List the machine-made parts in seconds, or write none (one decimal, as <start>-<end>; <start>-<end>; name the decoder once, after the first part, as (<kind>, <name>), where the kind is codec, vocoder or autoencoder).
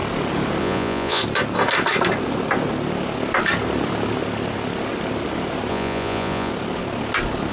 0.6-1.2 (vocoder, Vocos); 5.7-6.5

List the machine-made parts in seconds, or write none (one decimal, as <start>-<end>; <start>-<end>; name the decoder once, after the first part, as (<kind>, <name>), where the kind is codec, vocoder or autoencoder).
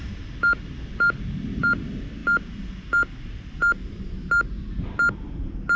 none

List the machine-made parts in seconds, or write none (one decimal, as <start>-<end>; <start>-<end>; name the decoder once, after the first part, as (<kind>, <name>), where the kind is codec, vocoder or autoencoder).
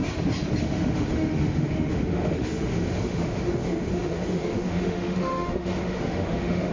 0.6-6.7 (autoencoder, DAC-VAE)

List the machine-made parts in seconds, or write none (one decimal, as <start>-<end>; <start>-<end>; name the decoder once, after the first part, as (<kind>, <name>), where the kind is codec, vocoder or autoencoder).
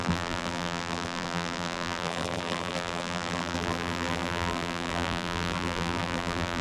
0.0-6.6 (vocoder, BigVGAN v2)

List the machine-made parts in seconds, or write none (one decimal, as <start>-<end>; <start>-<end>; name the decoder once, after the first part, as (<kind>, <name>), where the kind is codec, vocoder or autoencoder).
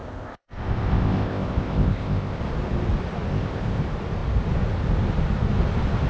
0.0-2.4 (codec, ZipCodec); 3.3-3.8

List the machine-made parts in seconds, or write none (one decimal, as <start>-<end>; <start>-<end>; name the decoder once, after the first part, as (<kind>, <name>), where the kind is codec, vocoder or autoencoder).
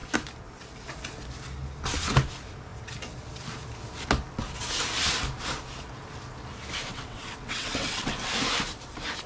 6.9-8.3 (vocoder, WaveNeXt)